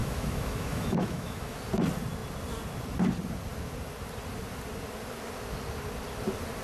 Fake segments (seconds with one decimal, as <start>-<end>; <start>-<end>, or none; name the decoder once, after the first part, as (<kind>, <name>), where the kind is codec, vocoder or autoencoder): 0.0-1.6 (autoencoder, DAC-VAE)